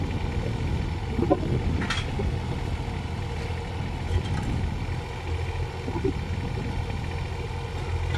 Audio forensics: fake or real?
real